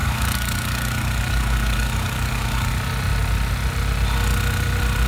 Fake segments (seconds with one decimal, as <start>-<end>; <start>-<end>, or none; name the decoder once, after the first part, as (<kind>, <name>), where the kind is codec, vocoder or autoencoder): 0.0-2.7 (codec, DAC)